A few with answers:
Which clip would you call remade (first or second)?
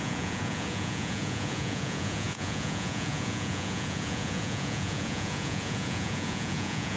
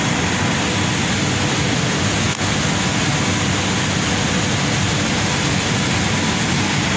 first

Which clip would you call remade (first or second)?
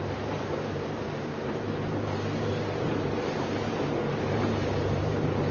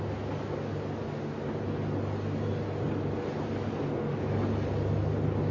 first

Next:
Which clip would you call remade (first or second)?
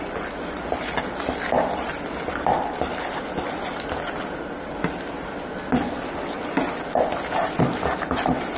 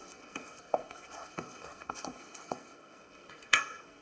second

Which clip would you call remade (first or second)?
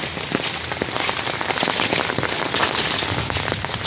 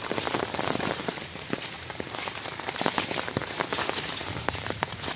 second